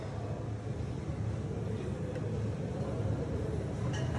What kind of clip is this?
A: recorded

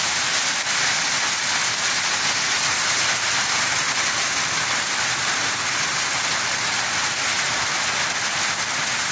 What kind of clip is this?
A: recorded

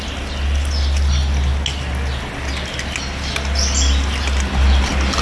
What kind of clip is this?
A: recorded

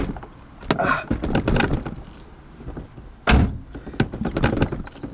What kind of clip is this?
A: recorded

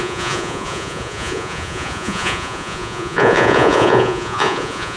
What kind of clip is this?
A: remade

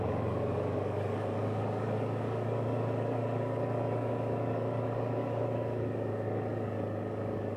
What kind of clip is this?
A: remade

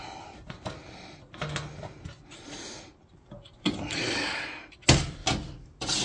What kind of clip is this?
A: recorded